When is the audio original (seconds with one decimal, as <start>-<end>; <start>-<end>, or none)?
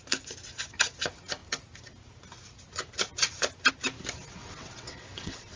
0.0-4.4